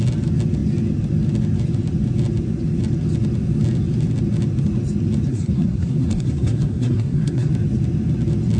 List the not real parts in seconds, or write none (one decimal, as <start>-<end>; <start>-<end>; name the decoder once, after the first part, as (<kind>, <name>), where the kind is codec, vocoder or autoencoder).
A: 5.3-7.5 (codec, SNAC)